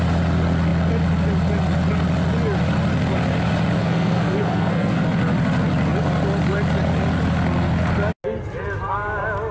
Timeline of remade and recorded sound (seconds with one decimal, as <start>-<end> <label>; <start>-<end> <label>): 0.0-3.8 recorded; 3.8-5.0 remade; 5.0-9.5 recorded